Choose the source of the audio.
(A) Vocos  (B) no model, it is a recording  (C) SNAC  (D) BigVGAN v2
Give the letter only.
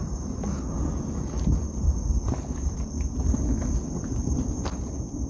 B